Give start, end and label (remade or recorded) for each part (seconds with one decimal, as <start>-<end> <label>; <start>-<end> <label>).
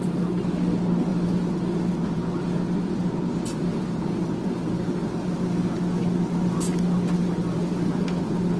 0.0-8.6 recorded